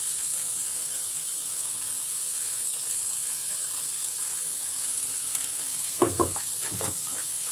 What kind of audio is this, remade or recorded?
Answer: remade